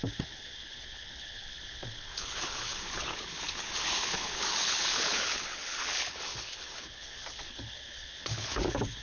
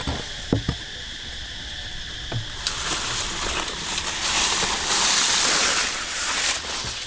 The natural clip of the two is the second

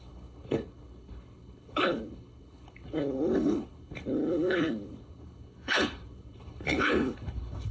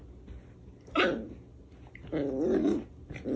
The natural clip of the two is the second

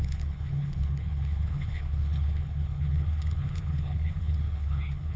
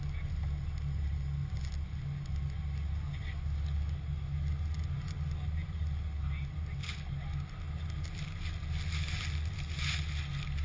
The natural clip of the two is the second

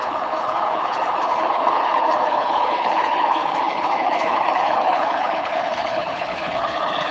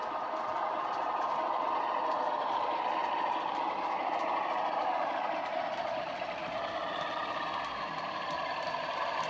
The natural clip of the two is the second